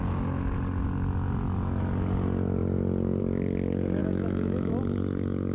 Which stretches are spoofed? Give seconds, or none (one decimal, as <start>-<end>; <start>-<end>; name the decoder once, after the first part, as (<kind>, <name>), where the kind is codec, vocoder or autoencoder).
4.0-4.7 (autoencoder, DAC-VAE)